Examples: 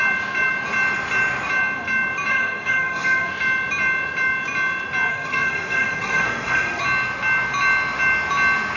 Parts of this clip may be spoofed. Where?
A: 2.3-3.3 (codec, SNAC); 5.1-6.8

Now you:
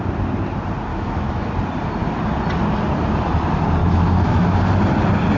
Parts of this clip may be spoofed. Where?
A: 0.9-1.5 (autoencoder, DAC-VAE); 3.8-4.6

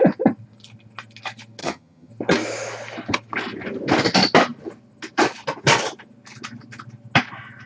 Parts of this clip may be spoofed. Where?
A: 1.6-2.1 (vocoder, HiFi-GAN)

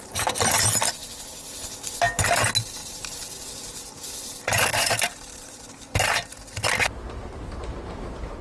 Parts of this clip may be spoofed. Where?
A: 2.8-3.4 (vocoder, BigVGAN v2); 4.7-5.6

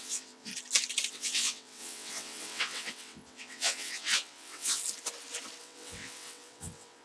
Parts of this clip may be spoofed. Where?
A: 0.0-0.5 (vocoder, WaveNeXt); 1.1-4.8; 5.6-7.0

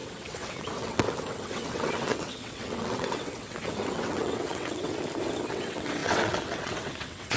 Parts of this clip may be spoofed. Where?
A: 0.0-4.9 (vocoder, WaveNeXt); 5.5-7.4

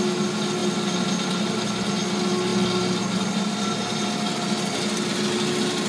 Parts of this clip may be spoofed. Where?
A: none

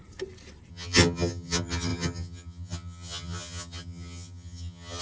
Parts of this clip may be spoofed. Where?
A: 0.7-5.0 (vocoder, HiFi-GAN)